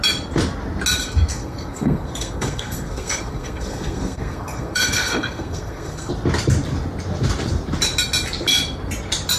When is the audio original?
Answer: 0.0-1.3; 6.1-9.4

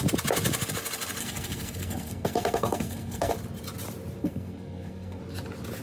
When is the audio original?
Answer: 0.0-1.2; 3.3-4.2; 5.2-5.8

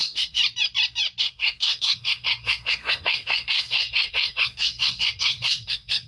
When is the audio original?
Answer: 0.4-1.2

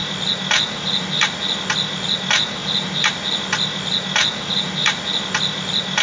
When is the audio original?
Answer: 0.0-6.0

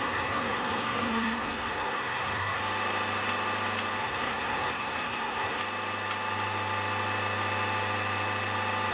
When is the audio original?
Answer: 2.6-4.0; 5.6-8.9

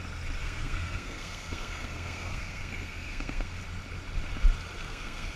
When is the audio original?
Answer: 0.0-0.4; 3.6-4.8